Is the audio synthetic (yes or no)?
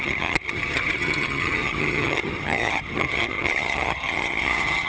yes